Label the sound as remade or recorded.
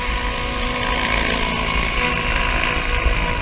recorded